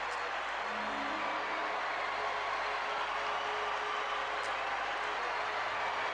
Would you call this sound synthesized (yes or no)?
no